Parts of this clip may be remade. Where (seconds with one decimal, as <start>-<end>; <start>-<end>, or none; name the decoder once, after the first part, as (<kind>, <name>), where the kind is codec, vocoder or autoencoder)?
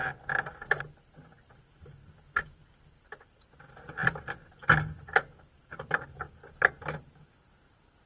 none